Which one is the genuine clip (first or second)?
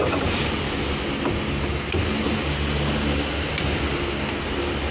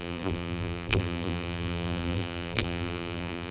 first